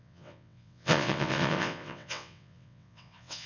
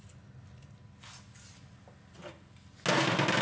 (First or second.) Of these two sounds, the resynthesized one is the first